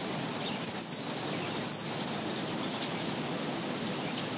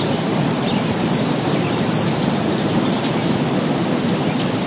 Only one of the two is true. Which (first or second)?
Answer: first